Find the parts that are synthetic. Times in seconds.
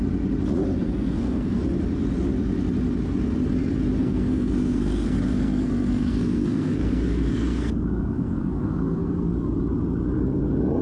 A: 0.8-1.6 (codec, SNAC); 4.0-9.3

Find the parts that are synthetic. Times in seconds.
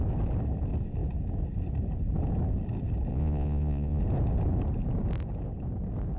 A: 3.1-4.0 (vocoder, Vocos)